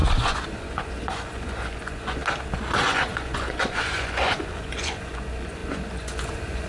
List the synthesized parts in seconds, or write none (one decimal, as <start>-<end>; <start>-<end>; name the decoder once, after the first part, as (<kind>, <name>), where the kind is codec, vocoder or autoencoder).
0.0-2.2 (vocoder, Vocos); 2.7-6.7